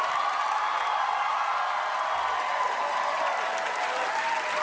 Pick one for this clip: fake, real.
real